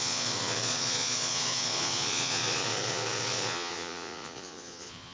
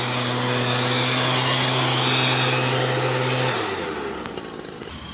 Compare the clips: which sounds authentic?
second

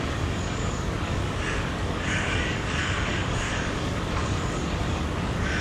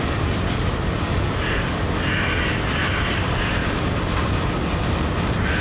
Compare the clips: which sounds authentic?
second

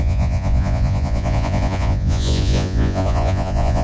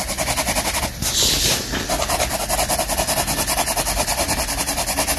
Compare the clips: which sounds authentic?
second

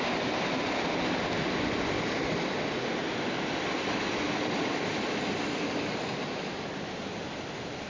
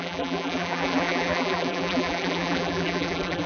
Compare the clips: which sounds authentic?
first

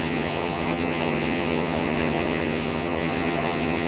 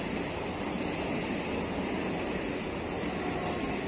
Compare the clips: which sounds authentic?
second